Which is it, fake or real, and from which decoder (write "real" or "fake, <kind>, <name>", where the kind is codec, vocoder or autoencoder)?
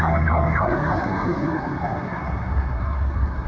fake, codec, SNAC